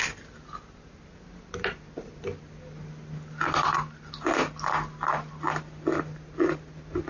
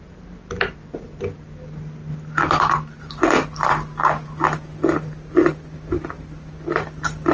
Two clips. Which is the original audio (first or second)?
first